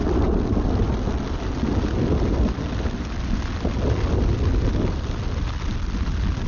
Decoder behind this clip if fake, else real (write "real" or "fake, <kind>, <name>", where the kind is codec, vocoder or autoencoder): real